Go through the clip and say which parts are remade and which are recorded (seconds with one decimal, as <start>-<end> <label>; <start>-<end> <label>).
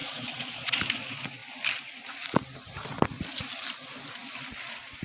0.0-0.8 remade; 0.8-5.0 recorded